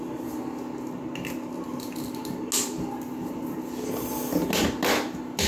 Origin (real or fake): real